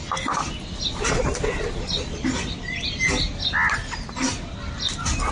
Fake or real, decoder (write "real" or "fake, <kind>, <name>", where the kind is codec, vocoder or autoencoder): real